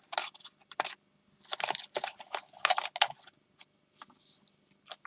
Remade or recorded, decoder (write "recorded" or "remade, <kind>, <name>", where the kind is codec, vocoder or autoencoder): recorded